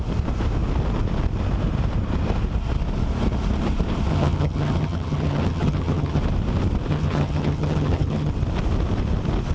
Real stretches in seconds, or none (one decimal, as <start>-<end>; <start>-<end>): 0.0-4.1; 6.2-6.9; 8.3-9.5